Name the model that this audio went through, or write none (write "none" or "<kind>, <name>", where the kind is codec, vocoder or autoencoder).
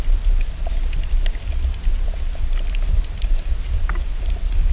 none